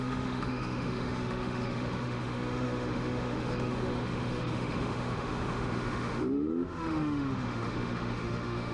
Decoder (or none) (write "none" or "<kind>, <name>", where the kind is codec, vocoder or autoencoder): autoencoder, DAC-VAE